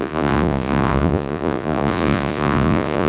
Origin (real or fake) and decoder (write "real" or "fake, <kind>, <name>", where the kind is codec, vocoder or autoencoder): fake, vocoder, Vocos